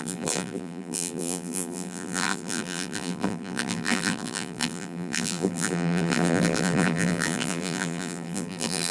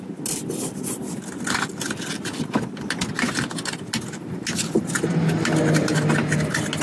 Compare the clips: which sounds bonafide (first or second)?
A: second